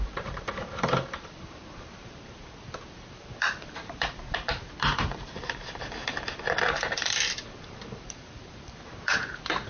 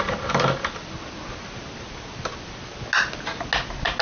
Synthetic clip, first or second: first